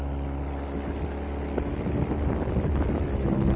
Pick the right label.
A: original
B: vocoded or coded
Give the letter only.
A